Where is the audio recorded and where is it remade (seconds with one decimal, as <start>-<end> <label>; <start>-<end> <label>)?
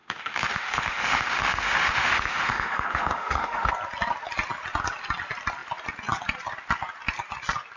0.0-3.7 remade; 3.7-7.8 recorded